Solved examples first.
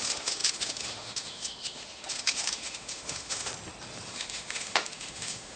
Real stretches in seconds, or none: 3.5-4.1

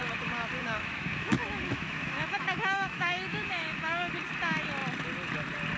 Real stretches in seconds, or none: 0.0-0.6; 4.1-5.8

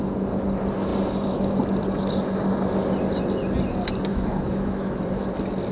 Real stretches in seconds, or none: 0.0-4.1; 5.0-5.7

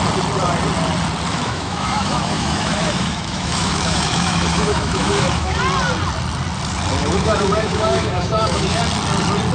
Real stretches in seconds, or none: 0.0-1.3; 5.6-7.0; 8.8-9.5